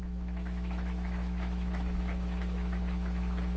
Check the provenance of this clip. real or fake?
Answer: fake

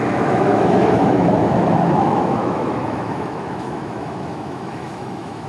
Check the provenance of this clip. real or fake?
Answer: fake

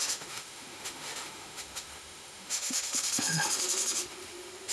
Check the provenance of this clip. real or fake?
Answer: fake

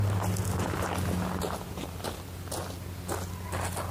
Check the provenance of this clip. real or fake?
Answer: real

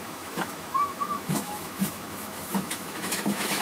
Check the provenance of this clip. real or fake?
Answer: fake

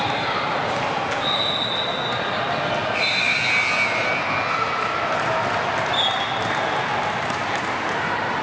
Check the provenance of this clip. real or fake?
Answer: real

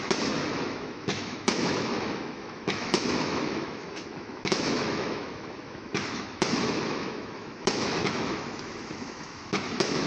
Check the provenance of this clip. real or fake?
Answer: fake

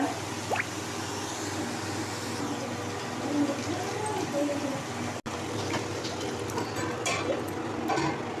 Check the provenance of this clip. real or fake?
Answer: real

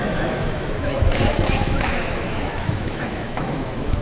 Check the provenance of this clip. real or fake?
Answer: fake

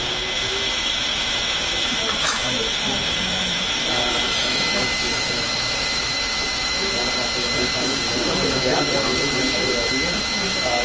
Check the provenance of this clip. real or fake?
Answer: fake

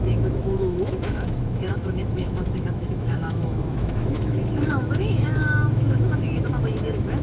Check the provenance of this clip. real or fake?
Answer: fake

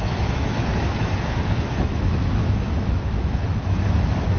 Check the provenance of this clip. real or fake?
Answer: fake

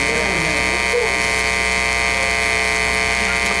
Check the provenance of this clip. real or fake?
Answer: real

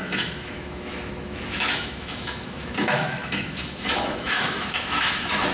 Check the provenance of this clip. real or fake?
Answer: fake